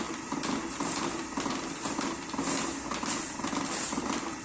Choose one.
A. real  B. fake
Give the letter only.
A